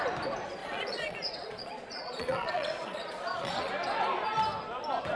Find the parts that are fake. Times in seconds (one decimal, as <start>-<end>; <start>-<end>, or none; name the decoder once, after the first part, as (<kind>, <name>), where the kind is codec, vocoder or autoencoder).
0.6-3.7 (vocoder, Vocos)